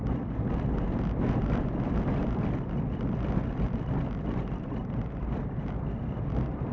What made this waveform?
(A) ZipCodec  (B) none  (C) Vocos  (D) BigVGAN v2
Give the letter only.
B